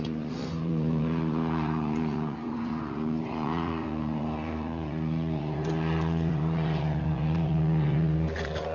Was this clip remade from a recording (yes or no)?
yes